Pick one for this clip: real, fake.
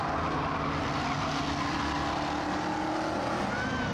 real